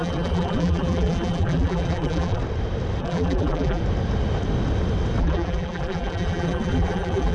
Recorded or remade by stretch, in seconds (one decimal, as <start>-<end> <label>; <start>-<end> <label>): 0.0-2.4 remade; 2.4-3.0 recorded; 3.0-3.8 remade; 3.8-5.2 recorded; 5.2-7.3 remade